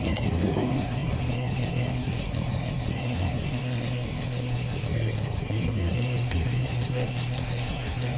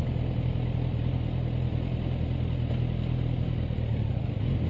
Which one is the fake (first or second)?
first